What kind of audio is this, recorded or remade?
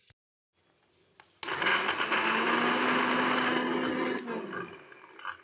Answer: recorded